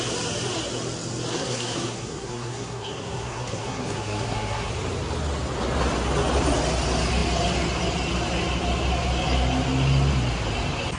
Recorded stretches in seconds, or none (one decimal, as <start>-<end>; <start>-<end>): 0.0-1.3; 4.7-11.0